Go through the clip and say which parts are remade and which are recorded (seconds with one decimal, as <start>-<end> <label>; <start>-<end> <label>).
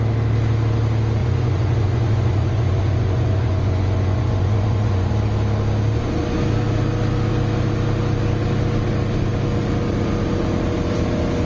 0.0-1.2 recorded; 1.2-5.1 remade; 5.1-11.5 recorded